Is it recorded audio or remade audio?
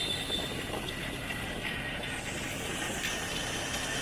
recorded